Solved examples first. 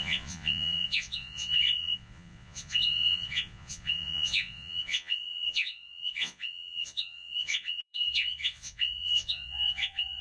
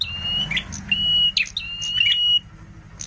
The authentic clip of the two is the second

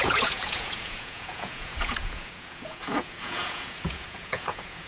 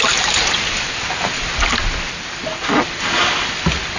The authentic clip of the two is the second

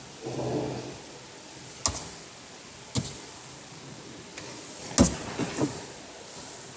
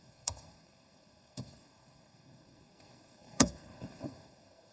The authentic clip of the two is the first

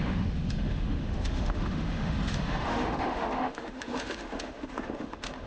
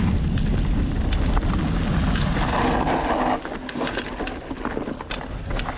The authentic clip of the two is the second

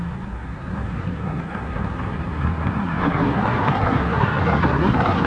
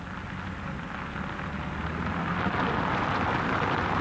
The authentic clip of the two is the second